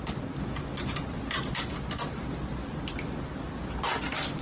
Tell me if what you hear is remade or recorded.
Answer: recorded